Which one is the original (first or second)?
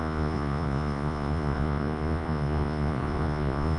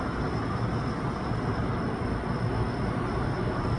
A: second